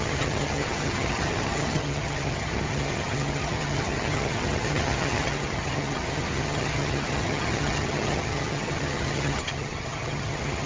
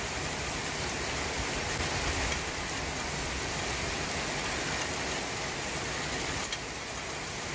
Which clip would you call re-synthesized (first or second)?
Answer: first